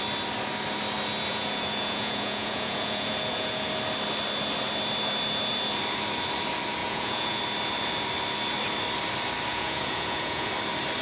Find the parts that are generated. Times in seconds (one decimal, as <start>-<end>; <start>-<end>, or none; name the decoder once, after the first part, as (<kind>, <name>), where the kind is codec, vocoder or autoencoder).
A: 1.3-3.7 (vocoder, Vocos); 6.8-7.4; 9.5-10.5